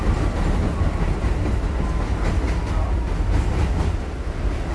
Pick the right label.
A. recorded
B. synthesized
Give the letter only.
A